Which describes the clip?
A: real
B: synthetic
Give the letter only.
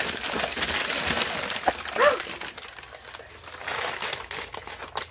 A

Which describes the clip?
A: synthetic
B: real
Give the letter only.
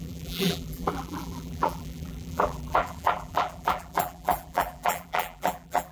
A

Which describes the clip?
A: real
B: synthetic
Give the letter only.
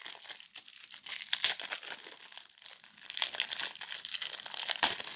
A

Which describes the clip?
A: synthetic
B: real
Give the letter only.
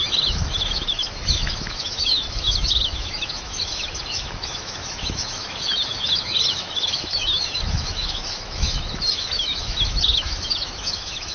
A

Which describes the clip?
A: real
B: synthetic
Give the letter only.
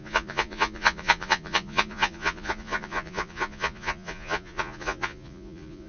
B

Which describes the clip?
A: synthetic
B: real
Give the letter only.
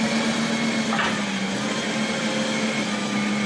B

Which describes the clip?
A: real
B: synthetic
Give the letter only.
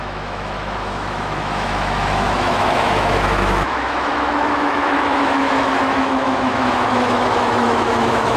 B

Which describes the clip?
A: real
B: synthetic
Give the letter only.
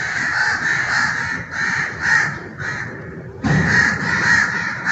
B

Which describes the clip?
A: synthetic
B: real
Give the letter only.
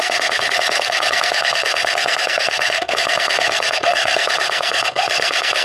A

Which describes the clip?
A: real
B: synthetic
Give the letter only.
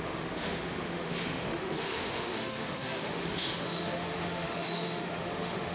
B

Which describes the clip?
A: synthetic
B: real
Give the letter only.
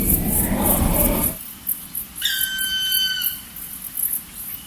B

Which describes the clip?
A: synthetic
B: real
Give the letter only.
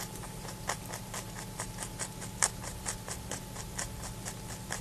B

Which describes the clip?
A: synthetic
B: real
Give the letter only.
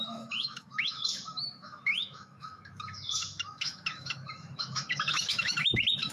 A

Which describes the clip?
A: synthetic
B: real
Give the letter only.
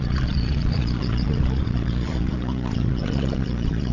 A